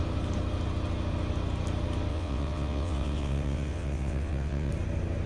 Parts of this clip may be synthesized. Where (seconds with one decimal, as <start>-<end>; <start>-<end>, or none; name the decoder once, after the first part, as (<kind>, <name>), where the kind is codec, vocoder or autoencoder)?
2.1-4.7 (vocoder, WaveNeXt)